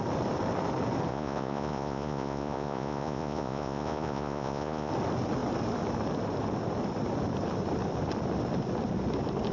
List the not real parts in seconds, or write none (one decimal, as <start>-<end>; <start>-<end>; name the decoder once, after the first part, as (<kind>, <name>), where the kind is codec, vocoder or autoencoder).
1.1-4.9 (vocoder, Vocos)